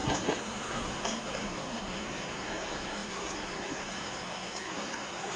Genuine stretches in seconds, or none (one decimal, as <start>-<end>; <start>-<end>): none